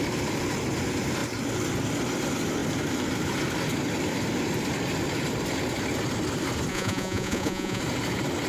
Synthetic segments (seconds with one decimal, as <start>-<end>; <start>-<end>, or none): 6.7-7.8